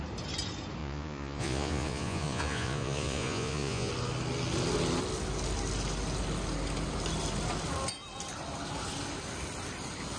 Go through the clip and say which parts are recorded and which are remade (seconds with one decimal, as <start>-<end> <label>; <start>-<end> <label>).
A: 0.0-0.8 recorded; 0.8-3.9 remade; 3.9-10.2 recorded